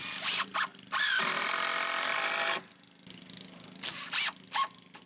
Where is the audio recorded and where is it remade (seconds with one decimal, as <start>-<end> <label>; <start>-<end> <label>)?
0.0-5.1 recorded